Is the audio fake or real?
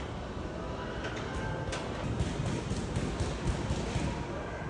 real